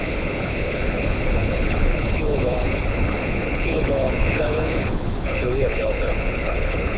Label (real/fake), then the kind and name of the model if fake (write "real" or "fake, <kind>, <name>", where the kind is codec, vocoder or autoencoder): fake, codec, HILCodec